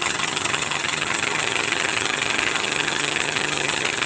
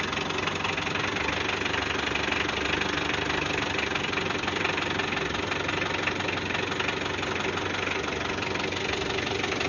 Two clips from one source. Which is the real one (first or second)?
second